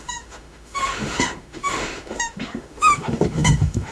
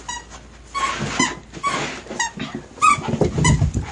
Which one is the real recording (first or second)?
second